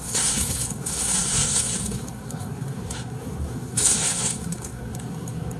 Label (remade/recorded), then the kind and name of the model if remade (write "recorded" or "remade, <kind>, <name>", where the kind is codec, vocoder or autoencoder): remade, codec, SNAC